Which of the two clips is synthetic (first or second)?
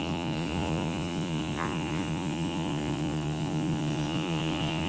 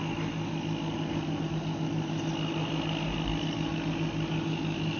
first